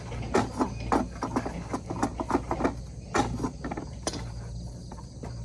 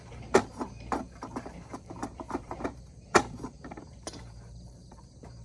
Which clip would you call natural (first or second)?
first